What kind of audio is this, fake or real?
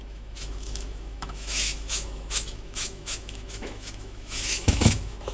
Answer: fake